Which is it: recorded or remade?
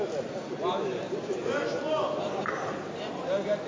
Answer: recorded